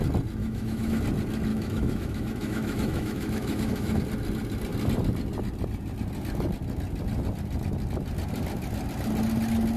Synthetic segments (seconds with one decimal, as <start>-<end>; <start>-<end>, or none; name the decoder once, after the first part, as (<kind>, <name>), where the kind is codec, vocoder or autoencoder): 0.4-1.0 (autoencoder, DAC-VAE); 1.5-4.0